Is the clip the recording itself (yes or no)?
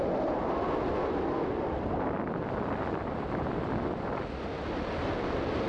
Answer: yes